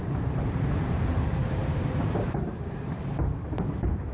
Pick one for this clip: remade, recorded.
remade